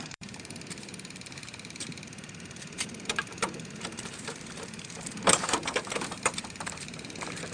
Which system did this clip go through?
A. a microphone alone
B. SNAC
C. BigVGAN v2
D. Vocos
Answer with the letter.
C